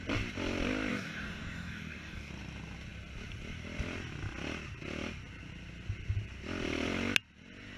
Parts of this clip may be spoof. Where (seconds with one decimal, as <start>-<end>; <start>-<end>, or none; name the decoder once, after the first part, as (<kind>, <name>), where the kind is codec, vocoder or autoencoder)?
0.9-2.3 (codec, DAC)